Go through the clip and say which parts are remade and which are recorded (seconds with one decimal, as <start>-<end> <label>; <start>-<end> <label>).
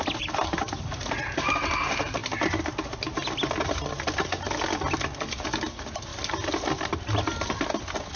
0.0-8.2 recorded